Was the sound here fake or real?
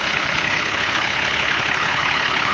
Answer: fake